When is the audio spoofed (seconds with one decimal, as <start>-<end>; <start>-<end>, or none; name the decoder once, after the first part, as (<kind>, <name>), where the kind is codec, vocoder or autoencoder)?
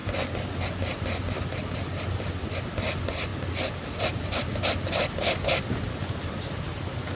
none